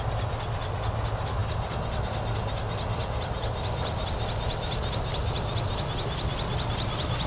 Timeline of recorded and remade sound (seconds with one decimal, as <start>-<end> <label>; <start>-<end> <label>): 0.0-7.3 recorded